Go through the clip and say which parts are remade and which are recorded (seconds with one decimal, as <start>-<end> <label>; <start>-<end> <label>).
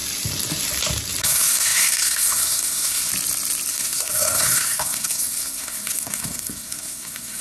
0.0-1.2 recorded; 1.2-3.1 remade; 3.1-3.7 recorded; 3.7-7.4 remade